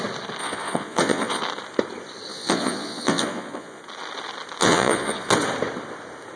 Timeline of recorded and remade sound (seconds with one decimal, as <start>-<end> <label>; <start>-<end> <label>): 0.0-0.4 recorded; 0.4-1.4 remade; 1.4-2.3 recorded; 2.3-3.8 remade; 3.8-4.6 recorded; 4.6-5.3 remade; 5.3-6.4 recorded